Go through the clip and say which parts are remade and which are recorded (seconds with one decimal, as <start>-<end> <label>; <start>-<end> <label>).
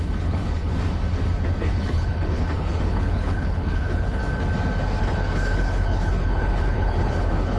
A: 0.0-0.7 remade; 0.7-1.6 recorded; 1.6-4.2 remade; 4.2-5.0 recorded; 5.0-7.6 remade